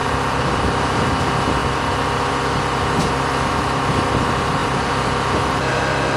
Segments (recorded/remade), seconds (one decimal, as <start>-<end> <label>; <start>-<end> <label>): 0.0-1.2 remade; 1.2-6.2 recorded

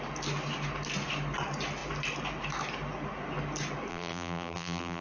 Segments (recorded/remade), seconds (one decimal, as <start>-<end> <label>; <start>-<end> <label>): 0.0-3.9 recorded; 3.9-5.0 remade

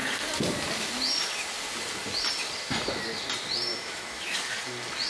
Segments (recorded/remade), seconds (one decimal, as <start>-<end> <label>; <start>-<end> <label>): 0.0-3.7 recorded; 3.7-4.5 remade; 4.5-5.1 recorded

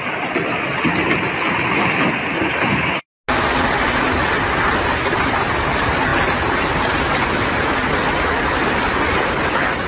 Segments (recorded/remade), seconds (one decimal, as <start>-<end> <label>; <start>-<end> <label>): 0.0-9.9 recorded

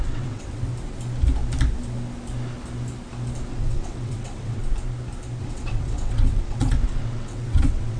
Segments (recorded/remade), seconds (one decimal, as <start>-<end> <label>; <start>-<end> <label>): 0.0-0.7 remade; 0.7-3.5 recorded; 3.5-4.6 remade; 4.6-5.4 recorded; 5.4-8.0 remade